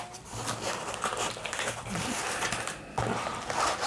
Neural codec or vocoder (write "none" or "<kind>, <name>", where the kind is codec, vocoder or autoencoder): none